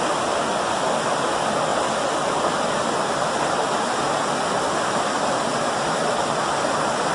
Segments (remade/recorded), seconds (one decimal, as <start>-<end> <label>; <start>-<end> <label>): 0.0-7.1 recorded